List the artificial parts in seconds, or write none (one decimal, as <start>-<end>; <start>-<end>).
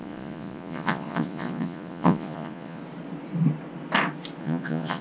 0.0-2.8; 4.4-5.0